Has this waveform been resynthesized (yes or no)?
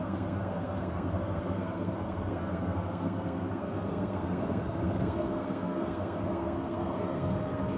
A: yes